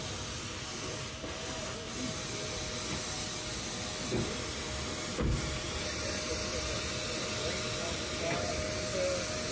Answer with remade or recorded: recorded